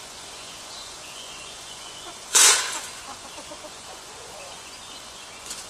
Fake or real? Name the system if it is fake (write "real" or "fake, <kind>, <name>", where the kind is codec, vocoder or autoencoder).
fake, vocoder, Vocos